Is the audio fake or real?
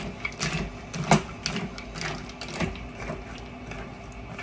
real